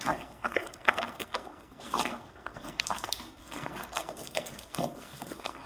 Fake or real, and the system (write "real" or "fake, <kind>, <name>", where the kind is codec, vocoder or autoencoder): fake, codec, SNAC